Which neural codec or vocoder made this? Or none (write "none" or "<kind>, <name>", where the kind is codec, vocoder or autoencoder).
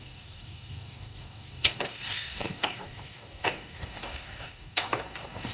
codec, DAC